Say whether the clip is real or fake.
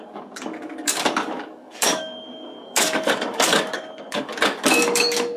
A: fake